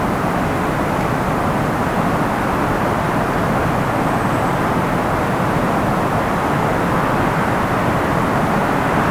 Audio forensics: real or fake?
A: real